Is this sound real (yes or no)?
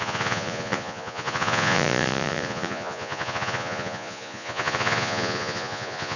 no